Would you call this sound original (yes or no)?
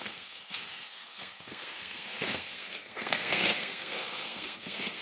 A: no